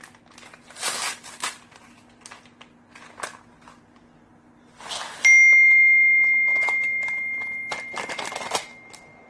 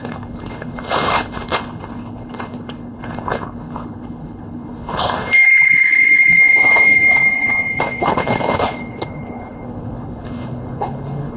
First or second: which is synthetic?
second